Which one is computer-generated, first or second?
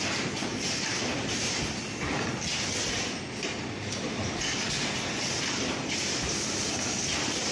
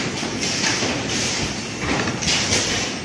second